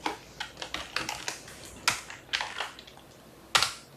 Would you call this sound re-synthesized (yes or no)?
no